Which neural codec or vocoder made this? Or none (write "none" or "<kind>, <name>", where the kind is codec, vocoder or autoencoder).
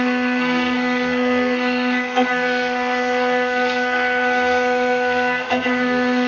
codec, SNAC